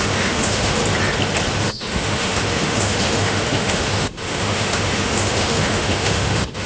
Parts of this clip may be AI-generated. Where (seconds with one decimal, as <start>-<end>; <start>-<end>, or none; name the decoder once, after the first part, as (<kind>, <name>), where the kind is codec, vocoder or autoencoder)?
0.0-0.8 (autoencoder, DAC-VAE); 1.6-6.7